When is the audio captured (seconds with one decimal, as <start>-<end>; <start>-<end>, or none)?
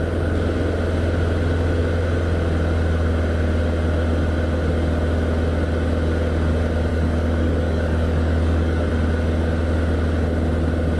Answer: 0.0-6.9; 8.9-11.0